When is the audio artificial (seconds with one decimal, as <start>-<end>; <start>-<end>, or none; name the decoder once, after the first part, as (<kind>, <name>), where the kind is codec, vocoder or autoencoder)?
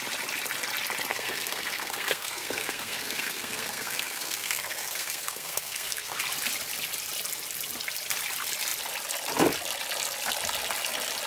1.1-6.2 (codec, SNAC)